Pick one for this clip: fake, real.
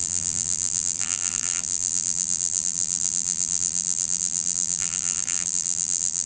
fake